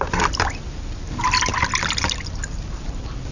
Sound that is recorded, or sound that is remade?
recorded